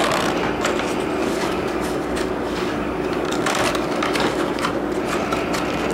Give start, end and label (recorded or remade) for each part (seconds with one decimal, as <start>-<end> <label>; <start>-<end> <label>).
0.0-1.2 recorded; 1.2-4.7 remade; 4.7-5.9 recorded